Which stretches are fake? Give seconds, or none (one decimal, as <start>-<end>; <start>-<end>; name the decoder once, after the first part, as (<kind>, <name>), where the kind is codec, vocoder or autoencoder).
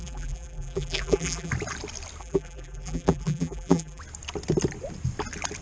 0.0-1.5 (vocoder, BigVGAN v2); 2.2-4.0